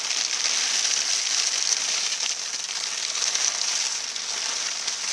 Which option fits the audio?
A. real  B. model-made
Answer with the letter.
A